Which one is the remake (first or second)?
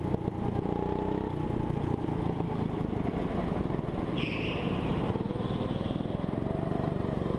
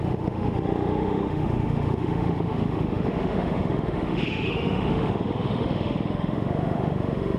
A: second